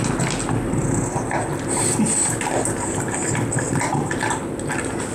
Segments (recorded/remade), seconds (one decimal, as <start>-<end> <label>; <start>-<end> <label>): 0.0-0.7 remade; 0.7-1.5 recorded; 1.5-2.3 remade; 2.3-5.1 recorded